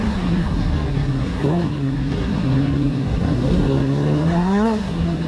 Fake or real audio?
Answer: fake